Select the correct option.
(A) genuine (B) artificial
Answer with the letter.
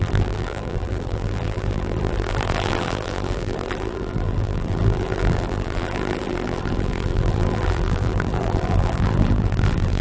B